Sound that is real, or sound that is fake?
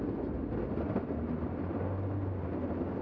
real